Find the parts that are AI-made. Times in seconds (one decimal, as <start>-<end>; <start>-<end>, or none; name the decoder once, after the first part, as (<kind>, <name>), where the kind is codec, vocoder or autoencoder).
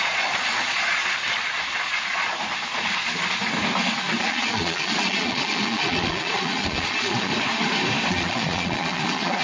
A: 0.0-1.0 (vocoder, Vocos); 4.2-7.3; 8.1-9.4